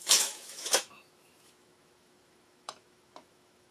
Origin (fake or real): fake